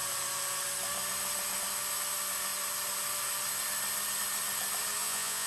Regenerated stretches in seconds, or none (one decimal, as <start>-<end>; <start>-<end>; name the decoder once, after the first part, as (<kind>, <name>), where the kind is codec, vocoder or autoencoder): 5.0-5.5 (vocoder, Vocos)